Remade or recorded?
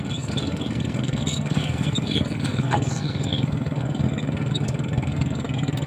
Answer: remade